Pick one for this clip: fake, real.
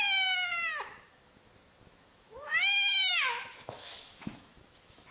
fake